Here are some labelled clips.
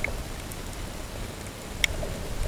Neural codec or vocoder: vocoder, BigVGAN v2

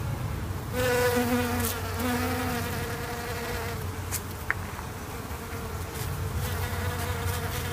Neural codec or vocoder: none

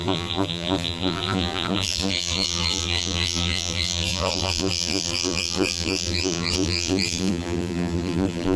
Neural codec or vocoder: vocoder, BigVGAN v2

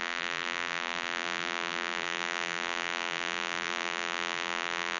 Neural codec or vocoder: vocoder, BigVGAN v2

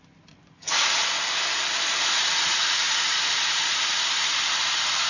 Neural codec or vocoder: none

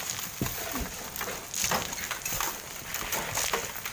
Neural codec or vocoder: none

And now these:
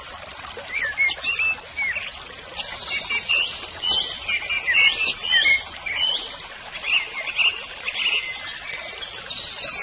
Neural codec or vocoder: none